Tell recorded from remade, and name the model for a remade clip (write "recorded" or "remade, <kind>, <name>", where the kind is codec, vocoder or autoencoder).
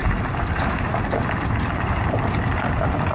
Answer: recorded